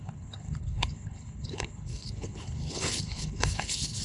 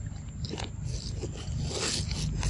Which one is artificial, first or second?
first